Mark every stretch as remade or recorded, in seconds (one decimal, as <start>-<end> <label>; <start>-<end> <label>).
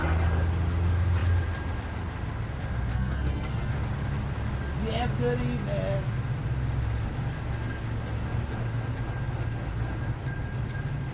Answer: 0.0-2.9 recorded; 2.9-3.7 remade; 3.7-11.1 recorded